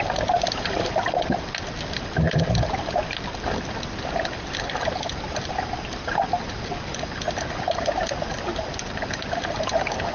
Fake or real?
real